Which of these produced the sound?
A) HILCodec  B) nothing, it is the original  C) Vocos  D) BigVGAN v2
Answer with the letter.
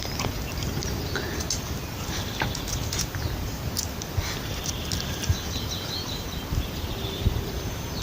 B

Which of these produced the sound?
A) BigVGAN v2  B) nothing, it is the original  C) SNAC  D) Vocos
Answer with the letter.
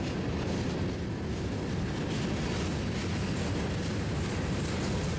B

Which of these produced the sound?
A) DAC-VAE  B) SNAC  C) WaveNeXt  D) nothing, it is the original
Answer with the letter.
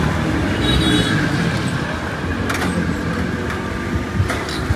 D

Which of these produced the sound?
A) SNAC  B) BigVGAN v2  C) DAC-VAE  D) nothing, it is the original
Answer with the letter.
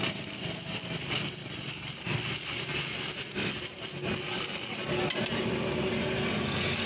D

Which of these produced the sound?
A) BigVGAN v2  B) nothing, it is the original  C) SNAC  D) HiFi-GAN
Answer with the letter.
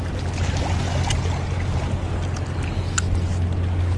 B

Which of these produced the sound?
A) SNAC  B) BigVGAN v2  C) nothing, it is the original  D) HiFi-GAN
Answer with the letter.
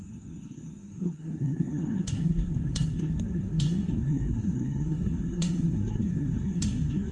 A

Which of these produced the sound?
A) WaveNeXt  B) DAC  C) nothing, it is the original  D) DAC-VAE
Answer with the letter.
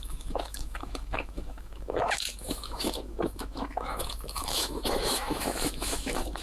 D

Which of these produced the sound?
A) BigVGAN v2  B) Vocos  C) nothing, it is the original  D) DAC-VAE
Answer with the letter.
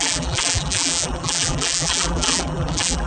A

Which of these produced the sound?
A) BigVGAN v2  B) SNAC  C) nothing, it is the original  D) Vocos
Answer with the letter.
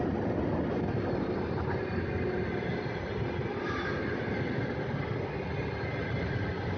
C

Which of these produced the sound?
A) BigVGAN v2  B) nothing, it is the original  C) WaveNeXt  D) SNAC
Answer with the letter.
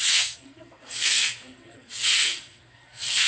D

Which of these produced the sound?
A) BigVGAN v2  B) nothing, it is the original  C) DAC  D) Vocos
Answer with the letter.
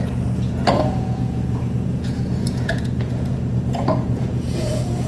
D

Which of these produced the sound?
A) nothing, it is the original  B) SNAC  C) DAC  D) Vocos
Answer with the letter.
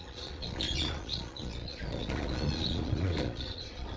D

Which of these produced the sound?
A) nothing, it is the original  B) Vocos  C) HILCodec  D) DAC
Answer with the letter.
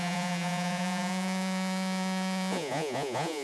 B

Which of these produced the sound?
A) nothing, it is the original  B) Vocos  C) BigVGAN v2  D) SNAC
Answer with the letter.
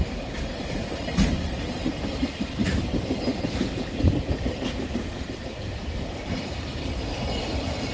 C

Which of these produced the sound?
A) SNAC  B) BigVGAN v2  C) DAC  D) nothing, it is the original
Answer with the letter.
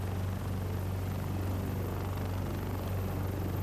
D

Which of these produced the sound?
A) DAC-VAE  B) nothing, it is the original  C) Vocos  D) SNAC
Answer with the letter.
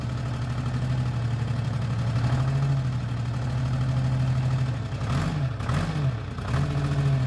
B